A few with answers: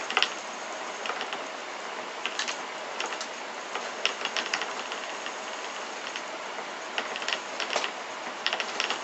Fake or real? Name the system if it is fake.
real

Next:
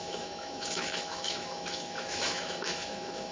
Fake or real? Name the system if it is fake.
fake, autoencoder, DAC-VAE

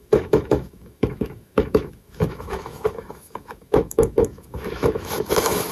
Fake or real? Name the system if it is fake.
fake, autoencoder, DAC-VAE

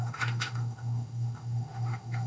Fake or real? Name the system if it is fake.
fake, autoencoder, DAC-VAE